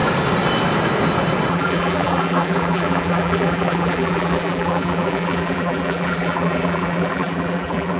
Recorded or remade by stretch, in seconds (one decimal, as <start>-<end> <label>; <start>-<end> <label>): 0.0-1.5 recorded; 1.5-8.0 remade

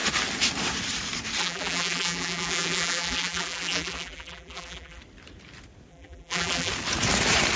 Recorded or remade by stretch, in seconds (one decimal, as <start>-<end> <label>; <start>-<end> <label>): 0.0-1.4 recorded; 1.4-5.0 remade; 5.0-5.9 recorded; 5.9-6.7 remade; 6.7-7.6 recorded

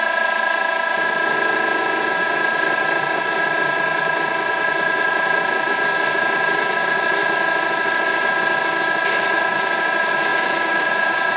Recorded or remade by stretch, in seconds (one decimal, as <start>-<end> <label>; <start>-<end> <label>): 0.0-7.2 remade; 7.2-9.2 recorded; 9.2-11.4 remade

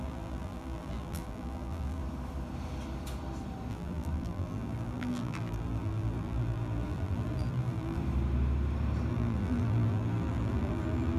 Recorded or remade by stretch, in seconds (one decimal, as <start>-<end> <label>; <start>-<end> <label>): 0.0-2.0 remade; 2.0-3.7 recorded; 3.7-8.0 remade; 8.0-9.1 recorded; 9.1-11.2 remade

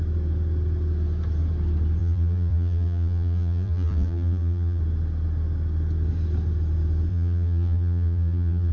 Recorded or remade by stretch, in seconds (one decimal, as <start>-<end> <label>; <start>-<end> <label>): 0.0-2.0 recorded; 2.0-4.8 remade; 4.8-7.1 recorded; 7.1-8.7 remade